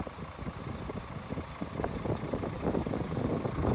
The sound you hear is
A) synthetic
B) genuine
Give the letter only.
B